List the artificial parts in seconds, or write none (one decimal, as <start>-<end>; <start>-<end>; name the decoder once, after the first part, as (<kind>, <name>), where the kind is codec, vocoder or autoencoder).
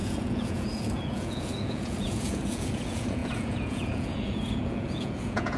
0.0-5.6 (vocoder, Vocos)